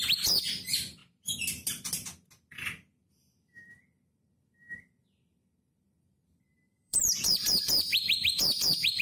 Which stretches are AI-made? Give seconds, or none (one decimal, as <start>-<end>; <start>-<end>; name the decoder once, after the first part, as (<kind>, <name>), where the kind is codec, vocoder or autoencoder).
0.0-1.0 (vocoder, BigVGAN v2); 6.0-9.0